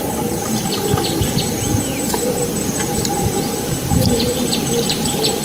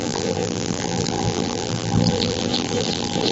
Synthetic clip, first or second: second